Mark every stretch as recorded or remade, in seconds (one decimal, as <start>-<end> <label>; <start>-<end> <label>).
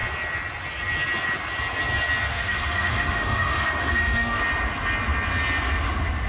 0.0-2.3 recorded; 2.3-4.4 remade; 4.4-6.3 recorded